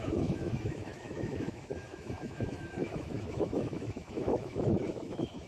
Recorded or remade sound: remade